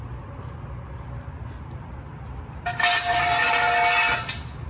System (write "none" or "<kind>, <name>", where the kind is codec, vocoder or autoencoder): none